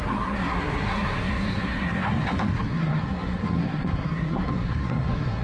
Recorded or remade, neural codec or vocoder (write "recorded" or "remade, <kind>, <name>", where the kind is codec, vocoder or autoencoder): remade, codec, SNAC